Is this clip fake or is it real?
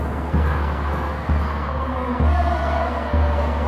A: fake